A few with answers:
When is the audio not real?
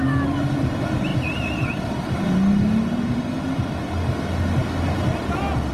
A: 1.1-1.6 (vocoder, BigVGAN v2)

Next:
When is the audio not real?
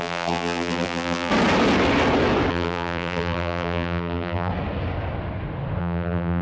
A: 0.0-1.3 (vocoder, BigVGAN v2); 2.5-4.5; 5.8-6.4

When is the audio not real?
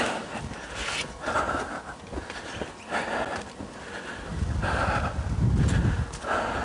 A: none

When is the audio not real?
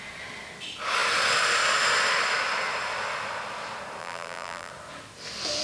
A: 4.0-4.7 (vocoder, BigVGAN v2)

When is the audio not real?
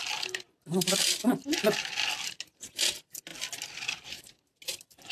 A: none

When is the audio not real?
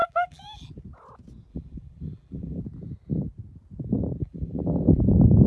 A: 0.0-0.7 (vocoder, BigVGAN v2); 1.5-2.6; 4.2-5.0